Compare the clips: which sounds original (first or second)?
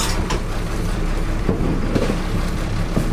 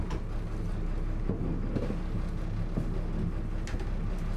second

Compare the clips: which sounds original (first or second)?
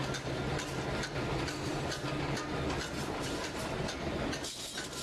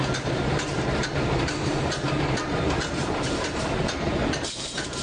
first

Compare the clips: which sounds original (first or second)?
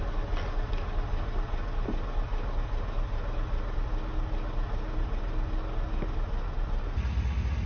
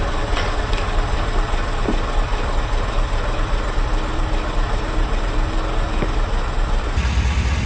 first